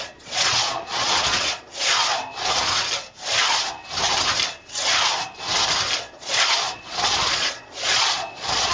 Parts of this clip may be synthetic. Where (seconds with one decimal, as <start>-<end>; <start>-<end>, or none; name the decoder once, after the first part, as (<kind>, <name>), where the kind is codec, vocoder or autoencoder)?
0.0-1.9 (vocoder, Vocos); 6.0-8.7